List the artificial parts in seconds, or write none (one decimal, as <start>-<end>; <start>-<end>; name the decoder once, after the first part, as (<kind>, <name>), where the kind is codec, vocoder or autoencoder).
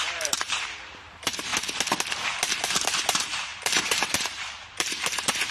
0.0-1.5 (vocoder, BigVGAN v2); 2.5-5.5